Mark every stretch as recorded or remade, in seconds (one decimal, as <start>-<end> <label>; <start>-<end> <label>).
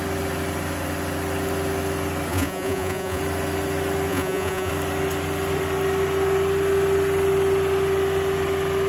0.0-2.3 recorded; 2.3-3.2 remade; 3.2-4.1 recorded; 4.1-4.7 remade; 4.7-8.9 recorded